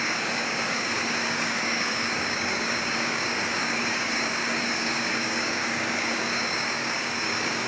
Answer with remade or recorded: remade